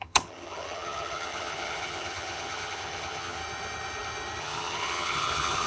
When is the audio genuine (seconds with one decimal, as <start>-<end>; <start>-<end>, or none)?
3.4-4.4